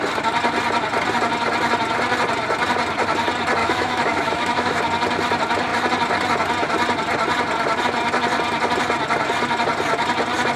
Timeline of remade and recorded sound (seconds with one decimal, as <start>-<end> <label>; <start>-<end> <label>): 0.0-3.6 recorded; 3.6-4.8 remade; 4.8-10.6 recorded